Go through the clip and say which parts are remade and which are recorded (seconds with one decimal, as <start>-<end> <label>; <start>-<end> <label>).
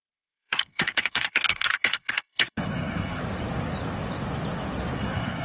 0.0-3.2 remade; 3.2-5.0 recorded; 5.0-5.4 remade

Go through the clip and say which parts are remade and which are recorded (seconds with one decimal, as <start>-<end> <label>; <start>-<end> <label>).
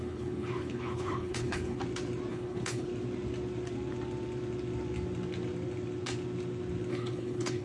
0.0-1.8 remade; 1.8-2.3 recorded; 2.3-2.9 remade; 2.9-6.9 recorded; 6.9-7.6 remade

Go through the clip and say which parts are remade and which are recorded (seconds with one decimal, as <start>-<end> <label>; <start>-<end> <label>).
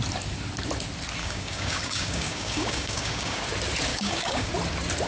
0.0-1.2 recorded; 1.2-3.4 remade; 3.4-3.9 recorded; 3.9-4.5 remade; 4.5-5.1 recorded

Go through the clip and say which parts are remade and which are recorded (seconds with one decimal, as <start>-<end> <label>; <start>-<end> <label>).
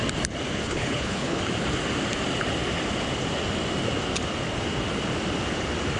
0.0-0.6 recorded; 0.6-1.4 remade; 1.4-6.0 recorded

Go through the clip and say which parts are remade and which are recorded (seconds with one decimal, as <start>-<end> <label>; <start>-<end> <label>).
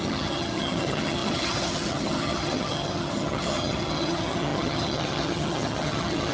0.0-6.3 remade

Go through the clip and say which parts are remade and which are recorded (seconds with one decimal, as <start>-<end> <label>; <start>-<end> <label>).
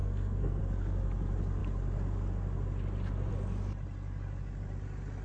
0.0-0.6 remade; 0.6-5.2 recorded